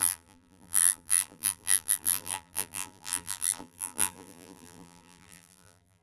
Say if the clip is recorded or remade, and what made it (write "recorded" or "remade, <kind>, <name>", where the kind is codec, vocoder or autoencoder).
remade, vocoder, BigVGAN v2